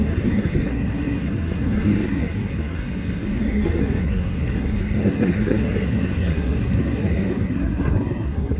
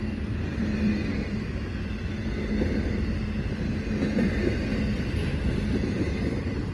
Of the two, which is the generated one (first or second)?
first